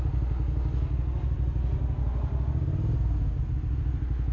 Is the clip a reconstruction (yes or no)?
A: no